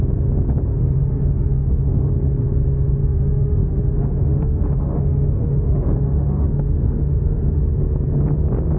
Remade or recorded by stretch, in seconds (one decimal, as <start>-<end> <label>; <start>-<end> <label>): 0.0-0.7 recorded; 0.7-2.1 remade; 2.1-3.0 recorded; 3.0-7.6 remade; 7.6-8.8 recorded